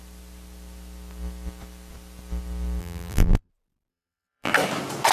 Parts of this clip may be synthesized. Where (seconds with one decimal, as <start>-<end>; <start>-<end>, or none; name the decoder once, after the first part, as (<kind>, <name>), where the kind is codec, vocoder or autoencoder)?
2.8-3.5 (vocoder, BigVGAN v2); 3.9-4.5